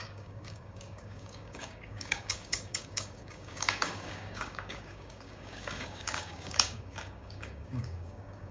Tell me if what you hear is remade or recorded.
remade